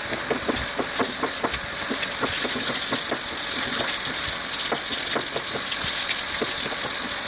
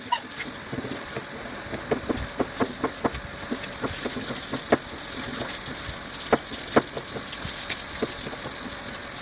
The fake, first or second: first